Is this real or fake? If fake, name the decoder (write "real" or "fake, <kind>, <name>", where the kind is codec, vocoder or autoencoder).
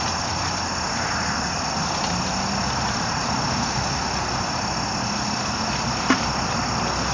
real